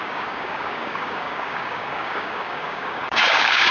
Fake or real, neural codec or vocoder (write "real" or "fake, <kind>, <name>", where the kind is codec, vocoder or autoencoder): fake, codec, DAC